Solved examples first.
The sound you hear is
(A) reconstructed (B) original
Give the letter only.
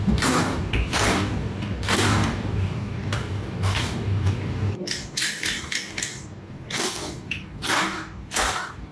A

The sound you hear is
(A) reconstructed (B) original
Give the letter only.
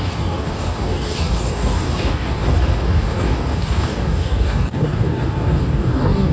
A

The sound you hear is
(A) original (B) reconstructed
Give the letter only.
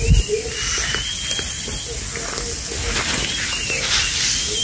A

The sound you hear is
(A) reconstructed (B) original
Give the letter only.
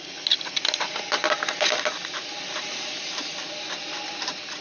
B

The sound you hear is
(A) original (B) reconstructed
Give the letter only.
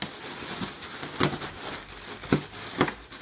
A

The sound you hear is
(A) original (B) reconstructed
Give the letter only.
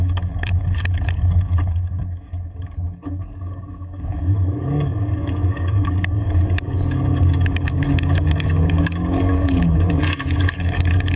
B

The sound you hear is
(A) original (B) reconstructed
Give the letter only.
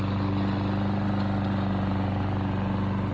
A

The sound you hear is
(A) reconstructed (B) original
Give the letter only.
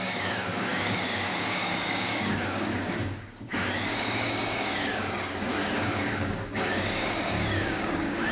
A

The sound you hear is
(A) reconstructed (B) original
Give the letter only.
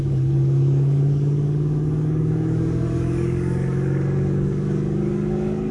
A